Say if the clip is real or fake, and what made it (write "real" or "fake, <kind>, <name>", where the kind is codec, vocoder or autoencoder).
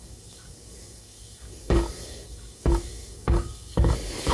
fake, codec, DAC